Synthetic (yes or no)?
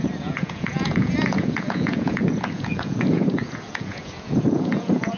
yes